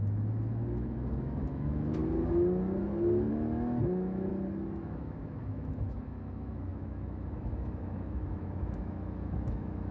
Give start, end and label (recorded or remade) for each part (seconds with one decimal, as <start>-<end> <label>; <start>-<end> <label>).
0.0-2.0 remade; 2.0-3.3 recorded; 3.3-4.3 remade; 4.3-4.8 recorded; 4.8-9.9 remade